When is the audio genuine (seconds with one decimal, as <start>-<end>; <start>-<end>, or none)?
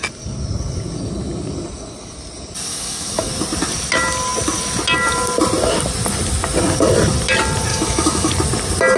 0.0-2.7; 3.3-7.7; 8.3-9.0